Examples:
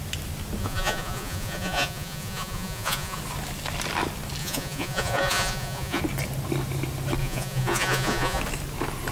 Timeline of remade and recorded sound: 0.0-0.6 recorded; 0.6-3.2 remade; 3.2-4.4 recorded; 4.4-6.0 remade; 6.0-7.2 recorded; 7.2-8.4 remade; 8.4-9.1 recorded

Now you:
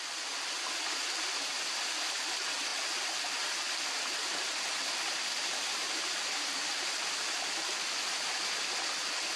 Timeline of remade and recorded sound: 0.0-9.4 recorded

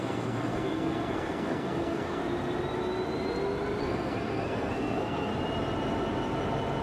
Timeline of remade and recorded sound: 0.0-2.2 remade; 2.2-3.8 recorded; 3.8-5.3 remade; 5.3-6.8 recorded

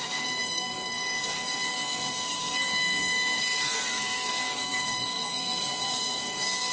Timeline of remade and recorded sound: 0.0-6.7 remade

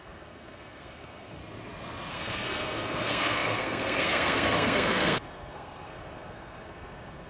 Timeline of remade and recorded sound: 0.0-1.4 remade; 1.4-2.1 recorded; 2.1-7.3 remade